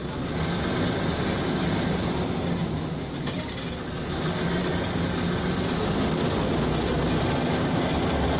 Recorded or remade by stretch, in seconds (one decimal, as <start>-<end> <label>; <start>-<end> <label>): 0.0-8.4 recorded